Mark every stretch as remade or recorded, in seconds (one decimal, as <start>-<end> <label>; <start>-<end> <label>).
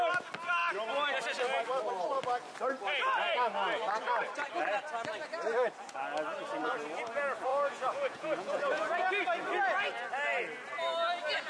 0.0-7.5 recorded; 7.5-9.1 remade; 9.1-11.5 recorded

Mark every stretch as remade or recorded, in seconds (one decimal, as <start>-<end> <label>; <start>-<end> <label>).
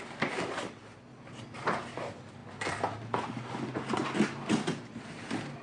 0.0-1.1 recorded; 1.1-1.8 remade; 1.8-5.6 recorded